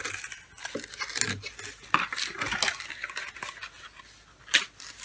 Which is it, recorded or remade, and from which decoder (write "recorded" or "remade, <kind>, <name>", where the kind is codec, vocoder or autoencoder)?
recorded